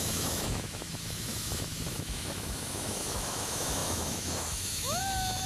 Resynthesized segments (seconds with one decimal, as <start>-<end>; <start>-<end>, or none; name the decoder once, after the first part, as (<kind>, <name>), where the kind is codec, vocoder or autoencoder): 0.0-5.5 (autoencoder, DAC-VAE)